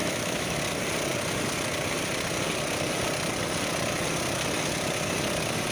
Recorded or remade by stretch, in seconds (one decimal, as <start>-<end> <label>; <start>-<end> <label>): 0.0-0.6 remade; 0.6-5.7 recorded